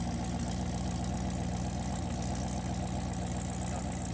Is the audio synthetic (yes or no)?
no